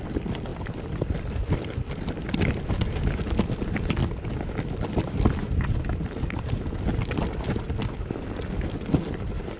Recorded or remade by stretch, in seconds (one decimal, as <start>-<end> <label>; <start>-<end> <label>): 0.0-9.6 recorded